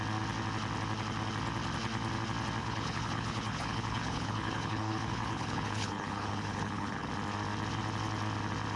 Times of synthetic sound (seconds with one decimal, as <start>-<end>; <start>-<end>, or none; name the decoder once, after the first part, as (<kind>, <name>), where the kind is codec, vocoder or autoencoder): 2.6-7.1 (codec, HILCodec)